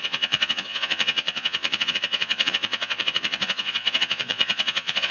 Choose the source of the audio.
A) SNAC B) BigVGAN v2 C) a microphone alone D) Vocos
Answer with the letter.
D